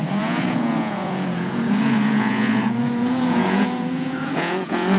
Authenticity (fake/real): fake